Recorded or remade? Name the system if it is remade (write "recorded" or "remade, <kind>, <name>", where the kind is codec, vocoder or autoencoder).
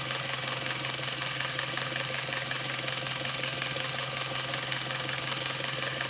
recorded